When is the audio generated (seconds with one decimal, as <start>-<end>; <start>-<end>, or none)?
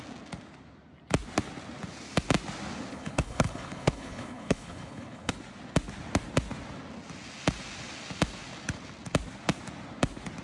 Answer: 2.9-5.3